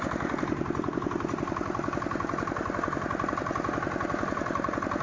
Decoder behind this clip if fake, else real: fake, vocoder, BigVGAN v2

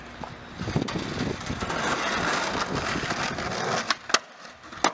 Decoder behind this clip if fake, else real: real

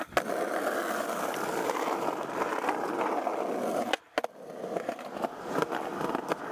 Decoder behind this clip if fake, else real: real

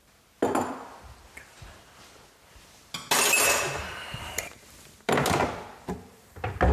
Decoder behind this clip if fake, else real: real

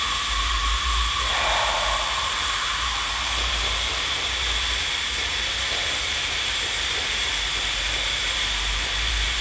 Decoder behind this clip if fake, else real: fake, vocoder, BigVGAN v2